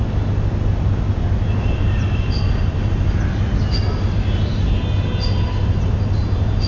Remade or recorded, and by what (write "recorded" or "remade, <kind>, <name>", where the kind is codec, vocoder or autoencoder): recorded